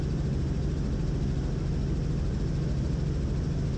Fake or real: real